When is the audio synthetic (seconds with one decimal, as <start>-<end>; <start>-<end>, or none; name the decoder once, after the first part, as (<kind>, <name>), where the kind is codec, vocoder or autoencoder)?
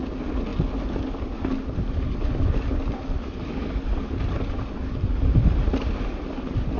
none